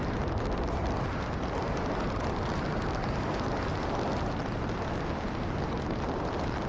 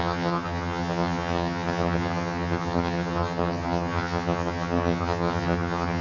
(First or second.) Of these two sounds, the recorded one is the first